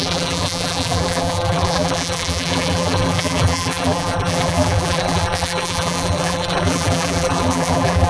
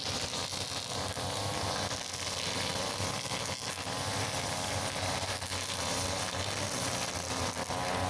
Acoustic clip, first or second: second